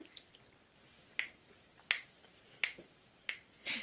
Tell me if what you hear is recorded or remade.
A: recorded